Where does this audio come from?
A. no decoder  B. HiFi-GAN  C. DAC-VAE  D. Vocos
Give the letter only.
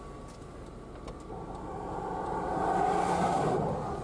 A